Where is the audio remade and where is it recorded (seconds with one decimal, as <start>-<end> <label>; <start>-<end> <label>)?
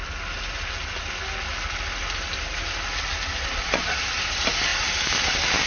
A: 0.0-3.4 recorded; 3.4-3.9 remade; 3.9-5.7 recorded